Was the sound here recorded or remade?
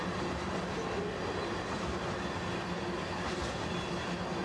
recorded